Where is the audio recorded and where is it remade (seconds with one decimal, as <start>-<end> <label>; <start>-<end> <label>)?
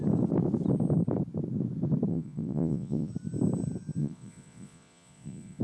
0.0-2.1 recorded; 2.1-3.1 remade; 3.1-4.0 recorded; 4.0-5.6 remade